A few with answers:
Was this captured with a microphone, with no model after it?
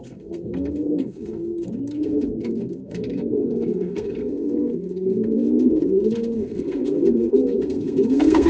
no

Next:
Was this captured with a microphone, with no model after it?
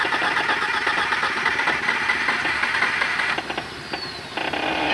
yes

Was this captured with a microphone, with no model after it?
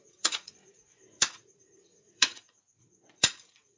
no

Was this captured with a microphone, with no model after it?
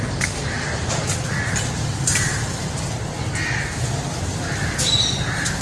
yes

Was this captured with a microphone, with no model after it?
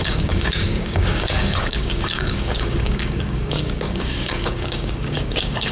no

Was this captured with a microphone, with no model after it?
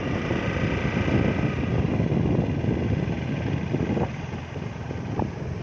yes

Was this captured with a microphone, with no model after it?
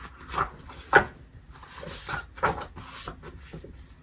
yes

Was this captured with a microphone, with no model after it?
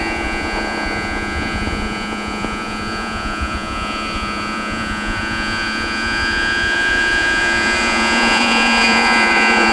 no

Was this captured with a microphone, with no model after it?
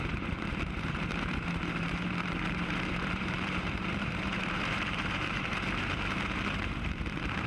no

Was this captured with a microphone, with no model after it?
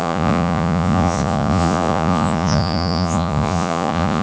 no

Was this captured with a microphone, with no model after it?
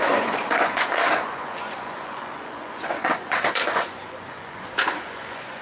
no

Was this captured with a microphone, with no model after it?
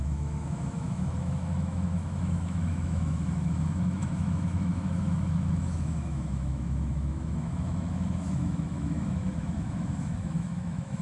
no